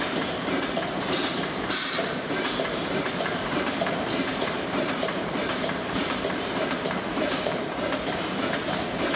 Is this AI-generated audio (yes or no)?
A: yes